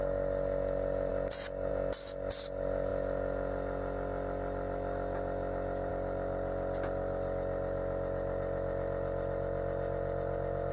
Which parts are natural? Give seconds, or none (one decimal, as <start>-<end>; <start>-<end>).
0.0-10.7